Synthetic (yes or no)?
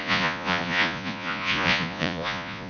yes